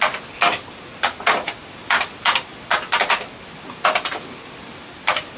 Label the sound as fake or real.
real